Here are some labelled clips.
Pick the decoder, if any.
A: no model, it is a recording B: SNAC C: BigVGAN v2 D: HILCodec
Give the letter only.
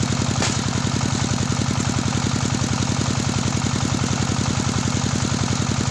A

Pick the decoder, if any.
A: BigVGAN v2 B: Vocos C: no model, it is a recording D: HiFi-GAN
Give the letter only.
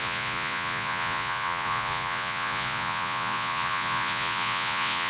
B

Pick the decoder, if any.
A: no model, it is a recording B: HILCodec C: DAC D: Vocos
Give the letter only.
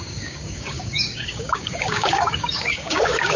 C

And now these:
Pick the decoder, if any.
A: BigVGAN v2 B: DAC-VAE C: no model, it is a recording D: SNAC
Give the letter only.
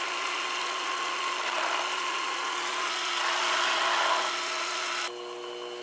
C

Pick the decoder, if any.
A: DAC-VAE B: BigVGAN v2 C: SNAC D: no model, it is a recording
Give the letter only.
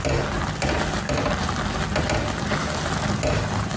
D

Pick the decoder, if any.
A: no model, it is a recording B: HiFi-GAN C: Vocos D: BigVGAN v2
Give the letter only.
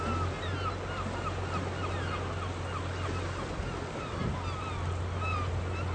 A